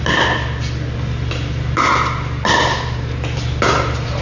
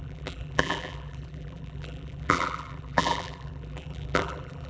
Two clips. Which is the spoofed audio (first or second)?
second